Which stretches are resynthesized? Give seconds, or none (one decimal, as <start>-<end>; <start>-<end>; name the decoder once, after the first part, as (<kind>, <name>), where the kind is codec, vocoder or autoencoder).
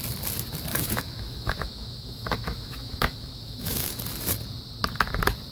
0.7-4.0 (autoencoder, DAC-VAE)